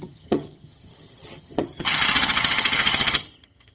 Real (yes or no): no